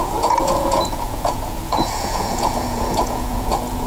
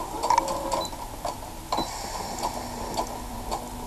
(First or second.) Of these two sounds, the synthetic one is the first